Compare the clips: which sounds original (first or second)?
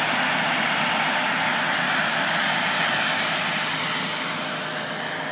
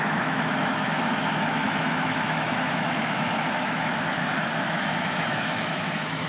first